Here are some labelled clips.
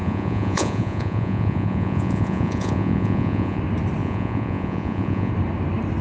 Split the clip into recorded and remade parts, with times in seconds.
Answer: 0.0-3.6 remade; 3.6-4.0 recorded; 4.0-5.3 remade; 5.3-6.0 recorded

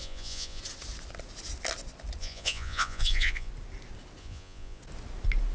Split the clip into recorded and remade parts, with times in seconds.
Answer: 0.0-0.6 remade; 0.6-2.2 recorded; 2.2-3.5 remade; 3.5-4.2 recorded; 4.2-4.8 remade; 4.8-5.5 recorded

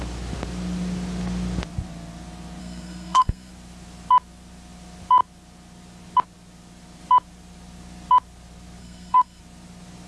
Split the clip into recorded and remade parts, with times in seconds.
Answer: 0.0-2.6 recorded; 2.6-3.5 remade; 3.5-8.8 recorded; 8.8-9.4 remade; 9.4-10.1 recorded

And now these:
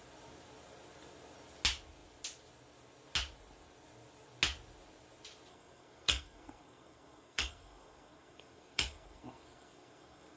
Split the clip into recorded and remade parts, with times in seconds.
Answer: 0.0-5.5 recorded; 5.5-10.4 remade

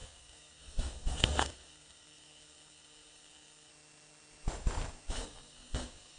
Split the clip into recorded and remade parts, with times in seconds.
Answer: 0.0-3.7 remade; 3.7-5.1 recorded; 5.1-6.2 remade

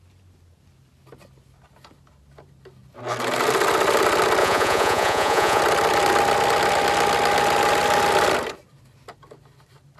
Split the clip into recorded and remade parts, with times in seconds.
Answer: 0.0-4.4 recorded; 4.4-5.6 remade; 5.6-10.0 recorded